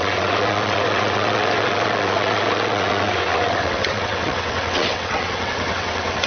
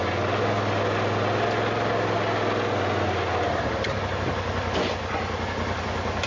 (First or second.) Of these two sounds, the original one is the second